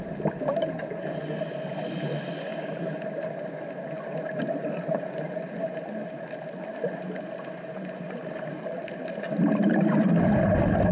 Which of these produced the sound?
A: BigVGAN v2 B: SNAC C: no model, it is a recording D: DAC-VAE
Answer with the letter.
C